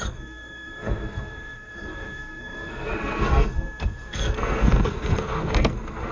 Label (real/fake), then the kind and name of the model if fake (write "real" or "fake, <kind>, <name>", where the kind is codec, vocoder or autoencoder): fake, codec, SNAC